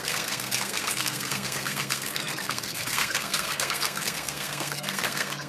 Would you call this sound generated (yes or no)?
yes